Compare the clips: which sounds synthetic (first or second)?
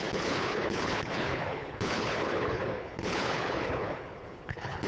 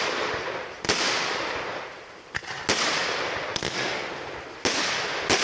first